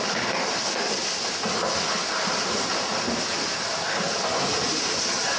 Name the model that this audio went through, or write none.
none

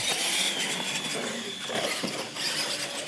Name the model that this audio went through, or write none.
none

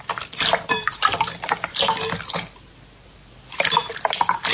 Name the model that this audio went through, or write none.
none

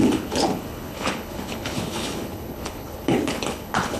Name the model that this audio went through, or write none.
codec, HILCodec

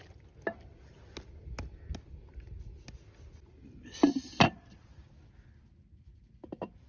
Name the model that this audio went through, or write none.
none